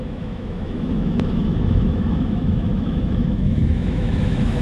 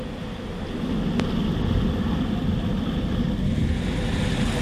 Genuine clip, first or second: second